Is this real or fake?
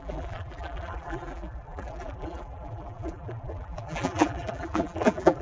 fake